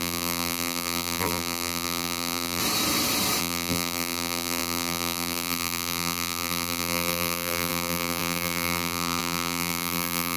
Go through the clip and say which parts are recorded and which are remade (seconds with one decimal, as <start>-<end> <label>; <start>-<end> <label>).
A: 0.0-2.6 remade; 2.6-3.4 recorded; 3.4-10.4 remade